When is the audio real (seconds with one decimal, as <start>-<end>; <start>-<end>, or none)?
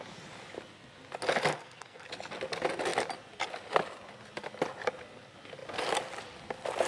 0.0-1.5; 2.1-6.9